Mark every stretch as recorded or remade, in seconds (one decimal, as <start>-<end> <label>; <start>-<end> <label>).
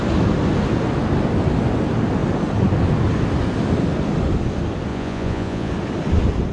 0.0-4.9 recorded; 4.9-5.7 remade; 5.7-6.5 recorded